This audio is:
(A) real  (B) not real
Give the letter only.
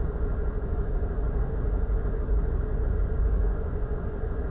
B